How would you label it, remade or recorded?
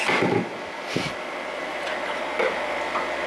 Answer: recorded